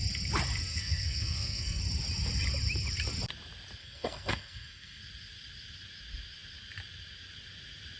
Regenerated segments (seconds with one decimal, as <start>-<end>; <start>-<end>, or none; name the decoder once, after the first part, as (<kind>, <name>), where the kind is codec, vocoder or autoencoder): 0.7-1.8 (codec, SNAC); 3.8-5.0

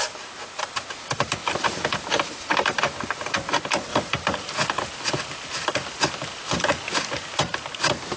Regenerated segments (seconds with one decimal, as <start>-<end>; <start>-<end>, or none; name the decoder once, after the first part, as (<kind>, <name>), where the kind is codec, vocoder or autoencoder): none

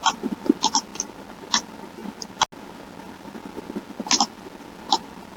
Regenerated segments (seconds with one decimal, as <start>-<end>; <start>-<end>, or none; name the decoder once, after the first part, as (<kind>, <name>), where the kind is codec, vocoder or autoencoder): none

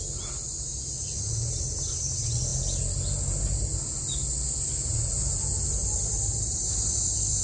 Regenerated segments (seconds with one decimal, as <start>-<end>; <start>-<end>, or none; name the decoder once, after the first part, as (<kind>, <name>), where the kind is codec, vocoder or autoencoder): 5.8-7.4 (vocoder, BigVGAN v2)

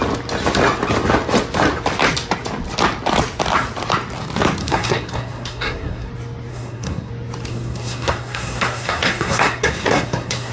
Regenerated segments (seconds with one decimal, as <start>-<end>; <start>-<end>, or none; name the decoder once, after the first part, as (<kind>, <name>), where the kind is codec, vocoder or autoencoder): 4.6-6.1 (codec, SNAC); 6.5-7.1; 7.5-10.5